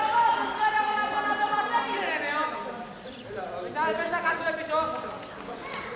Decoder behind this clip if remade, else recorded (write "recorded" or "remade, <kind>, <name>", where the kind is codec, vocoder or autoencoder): recorded